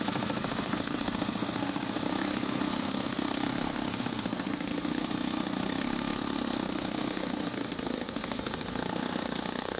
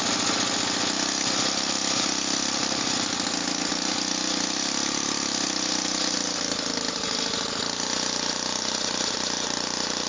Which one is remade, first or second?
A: first